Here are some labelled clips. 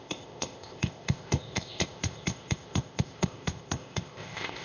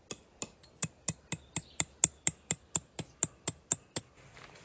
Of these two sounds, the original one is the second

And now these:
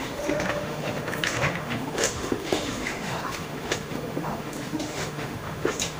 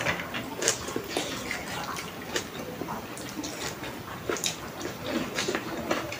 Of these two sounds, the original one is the second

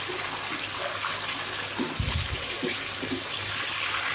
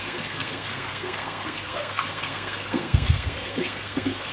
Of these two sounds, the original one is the first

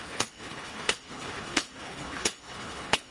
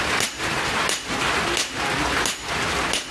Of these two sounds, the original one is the second